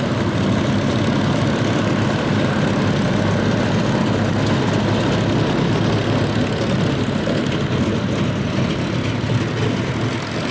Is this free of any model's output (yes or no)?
yes